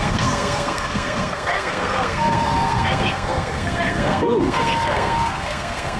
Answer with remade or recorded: remade